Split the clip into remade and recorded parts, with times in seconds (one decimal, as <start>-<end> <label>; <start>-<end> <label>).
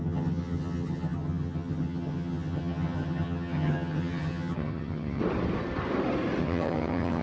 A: 0.0-5.2 remade; 5.2-6.4 recorded; 6.4-7.2 remade